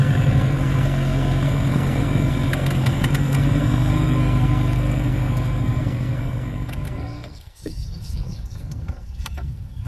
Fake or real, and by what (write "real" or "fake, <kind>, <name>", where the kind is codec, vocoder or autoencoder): fake, codec, SNAC